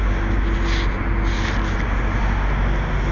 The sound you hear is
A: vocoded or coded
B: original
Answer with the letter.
B